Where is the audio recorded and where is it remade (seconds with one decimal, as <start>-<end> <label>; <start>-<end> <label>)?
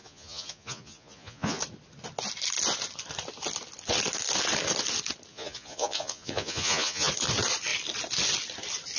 0.0-1.6 remade; 1.6-5.3 recorded; 5.3-7.1 remade; 7.1-9.0 recorded